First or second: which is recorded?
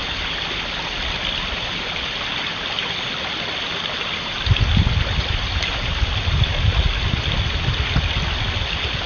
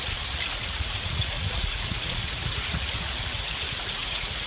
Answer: first